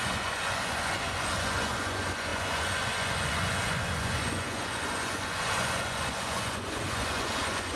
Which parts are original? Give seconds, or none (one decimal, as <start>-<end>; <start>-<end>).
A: none